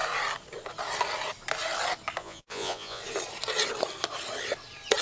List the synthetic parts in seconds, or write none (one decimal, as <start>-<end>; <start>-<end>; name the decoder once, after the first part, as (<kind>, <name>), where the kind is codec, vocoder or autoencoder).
2.2-3.0 (vocoder, Vocos)